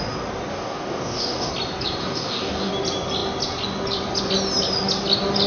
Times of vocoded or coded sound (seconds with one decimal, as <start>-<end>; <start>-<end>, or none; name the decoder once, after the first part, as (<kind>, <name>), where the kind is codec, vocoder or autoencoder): 0.5-1.5 (codec, DAC); 2.0-2.7